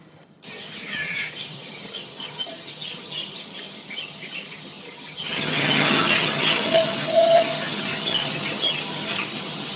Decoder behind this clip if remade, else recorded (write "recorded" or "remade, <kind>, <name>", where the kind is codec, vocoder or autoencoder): remade, vocoder, HiFi-GAN